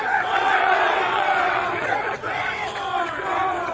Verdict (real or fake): fake